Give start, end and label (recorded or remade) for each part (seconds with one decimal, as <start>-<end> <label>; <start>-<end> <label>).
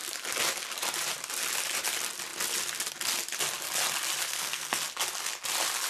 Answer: 0.0-4.2 recorded; 4.2-4.8 remade; 4.8-5.9 recorded